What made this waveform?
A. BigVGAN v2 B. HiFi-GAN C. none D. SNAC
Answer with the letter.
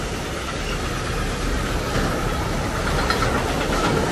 C